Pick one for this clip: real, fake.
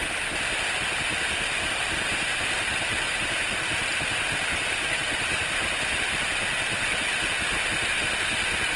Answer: real